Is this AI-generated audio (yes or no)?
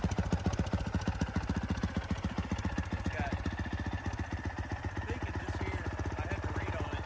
no